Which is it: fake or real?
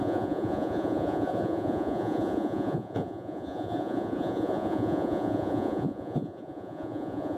fake